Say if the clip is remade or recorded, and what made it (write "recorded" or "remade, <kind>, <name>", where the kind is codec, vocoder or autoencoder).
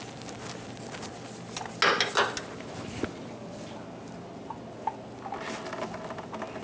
recorded